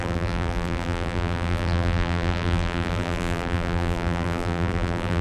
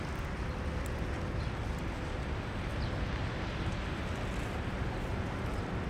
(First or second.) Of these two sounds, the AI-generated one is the first